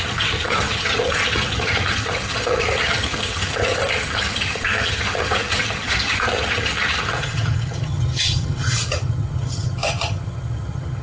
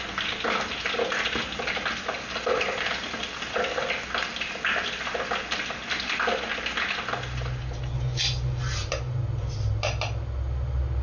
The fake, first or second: first